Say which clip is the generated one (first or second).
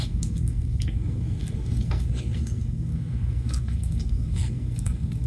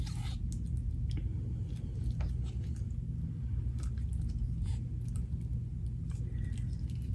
first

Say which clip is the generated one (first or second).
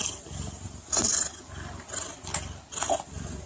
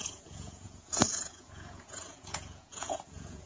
second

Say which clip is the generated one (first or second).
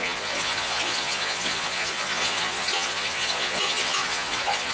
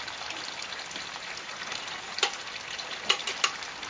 first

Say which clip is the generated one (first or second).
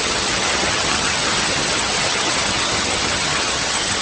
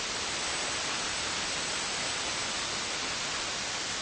first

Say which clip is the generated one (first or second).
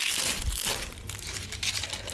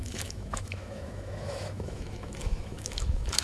second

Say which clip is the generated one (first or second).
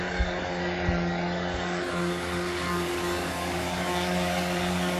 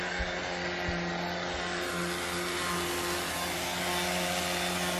first